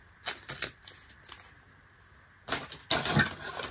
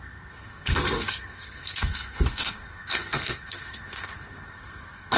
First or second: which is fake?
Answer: second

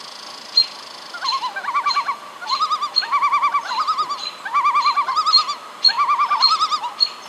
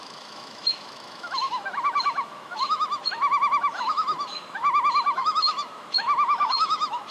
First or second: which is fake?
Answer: second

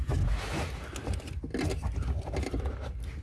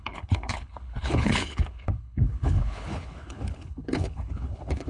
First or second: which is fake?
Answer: second